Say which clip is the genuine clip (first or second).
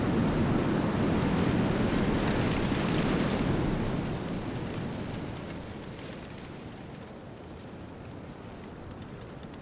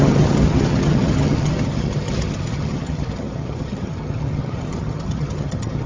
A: first